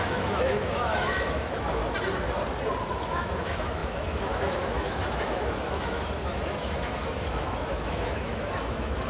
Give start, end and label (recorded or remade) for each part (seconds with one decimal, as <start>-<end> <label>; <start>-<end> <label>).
0.0-1.8 remade; 1.8-2.9 recorded; 2.9-9.1 remade